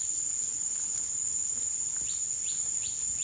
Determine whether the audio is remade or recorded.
recorded